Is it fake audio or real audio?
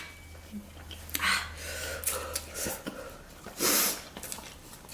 real